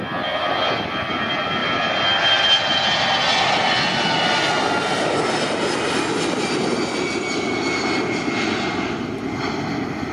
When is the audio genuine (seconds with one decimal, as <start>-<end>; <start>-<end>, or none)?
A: 0.0-10.1